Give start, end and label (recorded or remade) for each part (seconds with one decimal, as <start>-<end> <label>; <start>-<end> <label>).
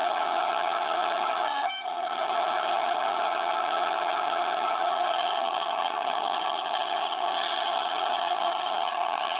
0.0-9.4 remade